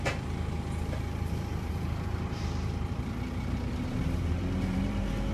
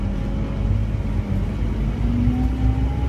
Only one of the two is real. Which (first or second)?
second